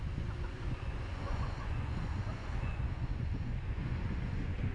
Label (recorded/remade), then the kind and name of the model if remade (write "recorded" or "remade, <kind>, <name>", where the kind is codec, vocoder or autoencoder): remade, vocoder, Vocos